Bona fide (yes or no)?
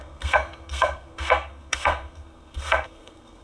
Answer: no